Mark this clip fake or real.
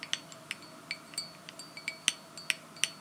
real